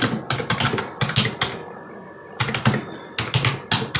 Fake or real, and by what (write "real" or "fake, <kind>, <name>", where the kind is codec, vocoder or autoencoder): real